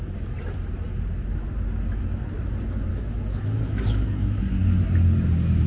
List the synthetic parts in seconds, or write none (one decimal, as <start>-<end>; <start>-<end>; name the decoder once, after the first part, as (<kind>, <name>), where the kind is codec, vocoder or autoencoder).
2.9-4.4 (autoencoder, DAC-VAE)